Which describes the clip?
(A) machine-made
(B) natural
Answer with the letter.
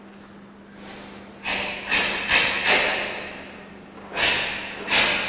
B